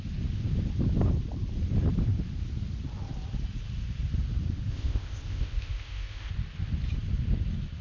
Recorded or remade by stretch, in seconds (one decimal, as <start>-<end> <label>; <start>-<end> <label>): 0.0-4.7 recorded; 4.7-6.3 remade; 6.3-7.8 recorded